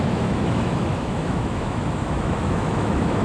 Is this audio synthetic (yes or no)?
yes